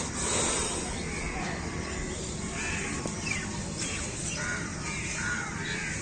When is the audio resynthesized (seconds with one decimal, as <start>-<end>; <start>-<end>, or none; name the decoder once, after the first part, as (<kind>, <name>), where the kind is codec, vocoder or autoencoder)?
2.0-3.0 (vocoder, BigVGAN v2); 3.6-4.2; 4.7-5.4